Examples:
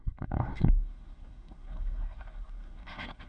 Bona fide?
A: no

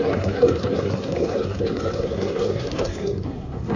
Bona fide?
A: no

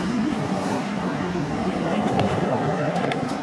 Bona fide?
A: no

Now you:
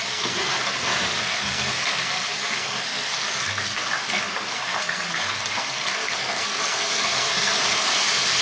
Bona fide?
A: no